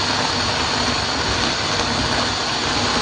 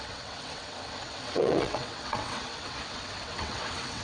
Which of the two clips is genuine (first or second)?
first